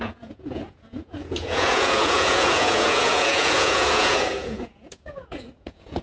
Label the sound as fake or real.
fake